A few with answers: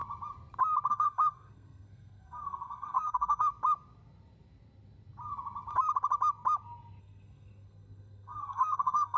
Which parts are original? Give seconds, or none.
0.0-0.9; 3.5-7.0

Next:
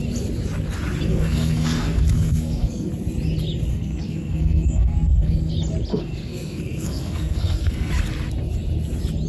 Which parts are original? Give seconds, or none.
0.0-1.1; 2.9-3.7; 5.5-5.9; 7.9-9.3

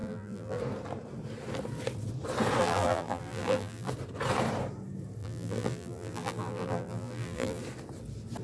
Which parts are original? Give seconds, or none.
0.6-2.6; 3.9-5.2; 7.6-8.4

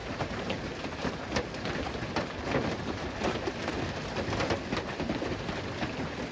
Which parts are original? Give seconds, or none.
3.7-6.3

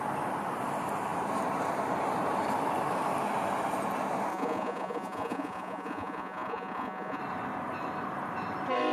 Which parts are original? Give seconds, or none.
0.0-4.3; 7.2-8.9

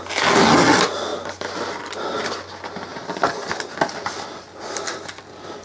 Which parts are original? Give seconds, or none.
0.0-5.6